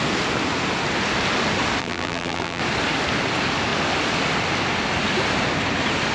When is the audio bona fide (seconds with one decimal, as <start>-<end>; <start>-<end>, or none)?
0.0-1.8; 2.6-6.1